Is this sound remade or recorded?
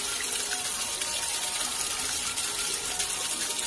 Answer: recorded